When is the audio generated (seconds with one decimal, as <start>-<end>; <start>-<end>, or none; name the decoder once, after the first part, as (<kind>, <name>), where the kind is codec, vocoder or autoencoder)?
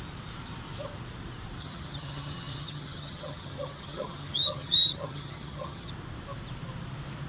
1.6-5.9 (vocoder, HiFi-GAN)